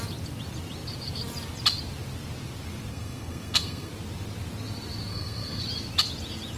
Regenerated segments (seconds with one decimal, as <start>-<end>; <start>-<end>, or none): 2.9-3.9; 5.1-5.6